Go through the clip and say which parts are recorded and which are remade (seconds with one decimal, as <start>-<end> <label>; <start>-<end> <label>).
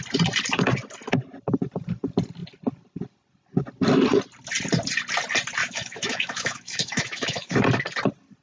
0.0-5.6 recorded; 5.6-7.6 remade; 7.6-8.4 recorded